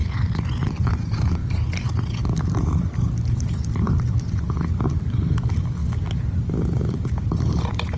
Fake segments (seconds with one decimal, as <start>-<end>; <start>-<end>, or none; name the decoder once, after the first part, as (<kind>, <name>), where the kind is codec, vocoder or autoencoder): 0.9-5.8 (vocoder, BigVGAN v2); 6.4-8.0